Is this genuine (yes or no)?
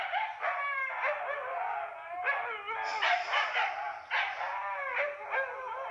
yes